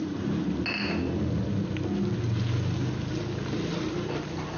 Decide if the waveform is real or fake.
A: real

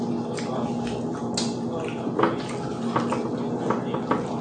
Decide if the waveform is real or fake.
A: real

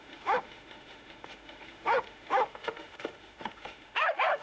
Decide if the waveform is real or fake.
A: fake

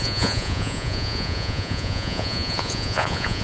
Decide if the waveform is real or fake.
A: fake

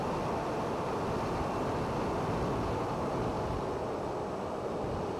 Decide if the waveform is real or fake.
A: real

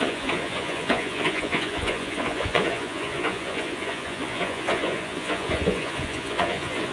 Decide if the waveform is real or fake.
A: fake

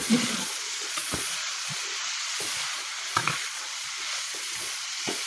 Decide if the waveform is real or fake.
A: fake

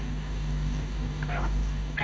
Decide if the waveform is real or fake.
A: fake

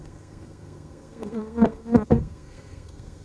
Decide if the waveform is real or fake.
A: fake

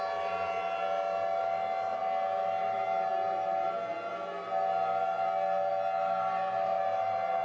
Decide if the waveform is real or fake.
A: real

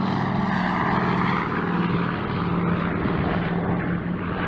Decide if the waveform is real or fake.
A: real